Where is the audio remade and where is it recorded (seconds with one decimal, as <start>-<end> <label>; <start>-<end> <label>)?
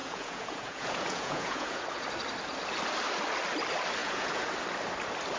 0.0-1.8 remade; 1.8-4.0 recorded; 4.0-4.5 remade; 4.5-5.4 recorded